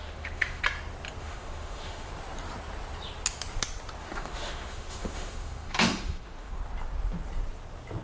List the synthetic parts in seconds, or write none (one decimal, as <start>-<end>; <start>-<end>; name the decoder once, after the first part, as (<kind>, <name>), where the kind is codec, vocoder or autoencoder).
0.0-0.6 (autoencoder, DAC-VAE); 1.2-2.1; 4.0-6.6